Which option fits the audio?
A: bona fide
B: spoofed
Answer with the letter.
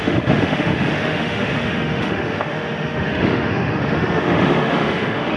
B